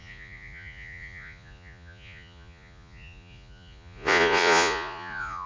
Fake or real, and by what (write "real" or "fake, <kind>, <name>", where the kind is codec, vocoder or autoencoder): fake, vocoder, Vocos